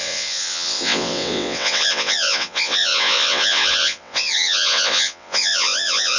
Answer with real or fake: fake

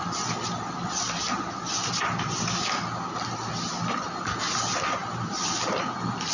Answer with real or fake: real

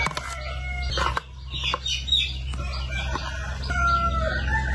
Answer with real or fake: real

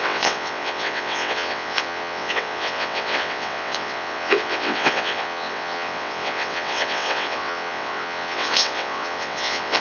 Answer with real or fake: fake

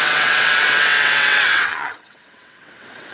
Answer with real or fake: fake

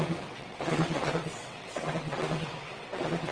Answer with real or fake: fake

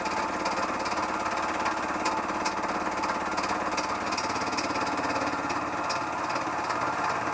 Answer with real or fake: real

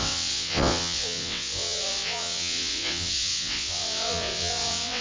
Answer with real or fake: fake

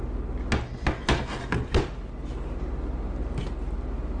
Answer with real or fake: real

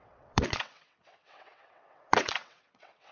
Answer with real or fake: fake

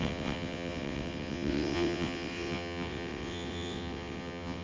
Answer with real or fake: fake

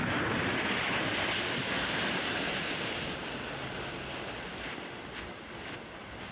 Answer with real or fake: real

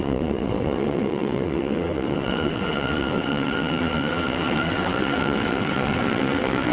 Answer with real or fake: fake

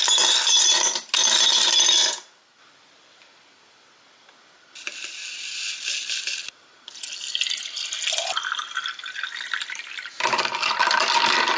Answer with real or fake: real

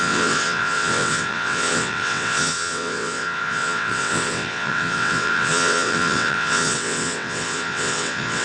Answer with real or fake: fake